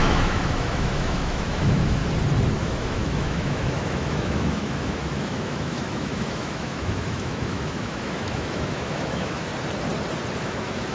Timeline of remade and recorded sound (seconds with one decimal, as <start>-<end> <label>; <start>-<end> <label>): 0.0-2.0 remade; 2.0-2.6 recorded; 2.6-9.5 remade; 9.5-10.4 recorded; 10.4-10.9 remade